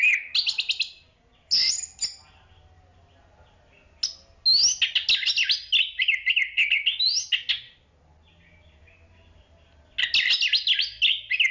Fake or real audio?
real